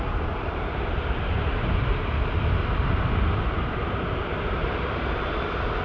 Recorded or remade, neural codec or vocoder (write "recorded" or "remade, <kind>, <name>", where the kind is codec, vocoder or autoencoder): remade, vocoder, BigVGAN v2